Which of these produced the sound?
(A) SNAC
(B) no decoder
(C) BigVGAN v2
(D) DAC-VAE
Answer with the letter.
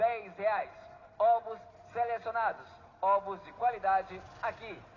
B